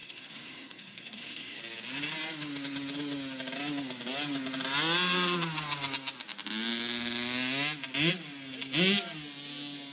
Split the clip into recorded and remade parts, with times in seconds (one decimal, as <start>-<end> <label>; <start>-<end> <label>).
0.0-1.6 remade; 1.6-9.9 recorded